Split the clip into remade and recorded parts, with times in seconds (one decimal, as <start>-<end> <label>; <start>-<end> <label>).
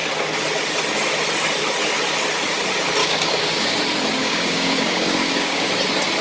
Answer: 0.0-3.0 recorded; 3.0-3.8 remade; 3.8-4.2 recorded; 4.2-5.7 remade; 5.7-6.2 recorded